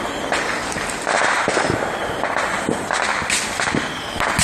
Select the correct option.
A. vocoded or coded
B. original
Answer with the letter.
B